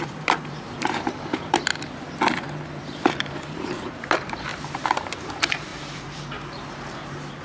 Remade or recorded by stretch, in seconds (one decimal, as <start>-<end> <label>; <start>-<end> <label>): 0.0-1.7 remade; 1.7-2.8 recorded; 2.8-7.4 remade